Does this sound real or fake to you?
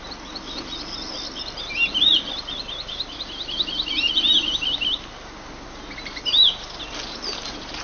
real